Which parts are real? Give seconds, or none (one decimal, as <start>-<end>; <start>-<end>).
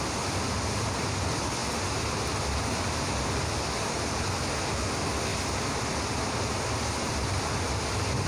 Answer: 0.0-8.3